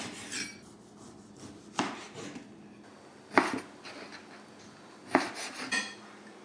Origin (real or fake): real